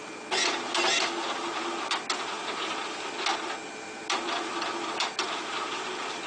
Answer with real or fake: real